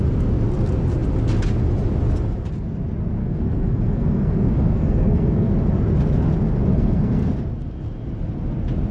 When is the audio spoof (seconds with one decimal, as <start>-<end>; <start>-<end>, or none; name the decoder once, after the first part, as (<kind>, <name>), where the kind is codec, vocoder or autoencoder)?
3.2-5.5 (codec, SNAC); 6.7-7.3